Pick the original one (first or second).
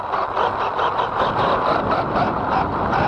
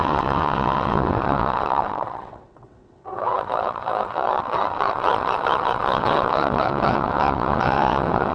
first